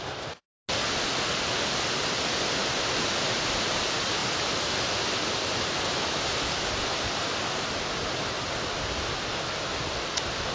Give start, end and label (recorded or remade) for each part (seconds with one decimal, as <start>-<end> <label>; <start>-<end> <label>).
0.0-10.5 recorded